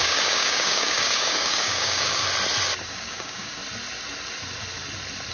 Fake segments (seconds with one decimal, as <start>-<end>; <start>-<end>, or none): 0.0-2.2; 2.9-3.6